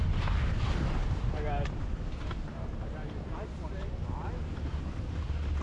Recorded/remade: recorded